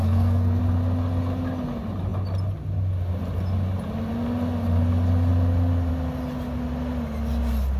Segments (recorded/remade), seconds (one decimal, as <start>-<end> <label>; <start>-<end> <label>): 0.0-0.6 remade; 0.6-7.8 recorded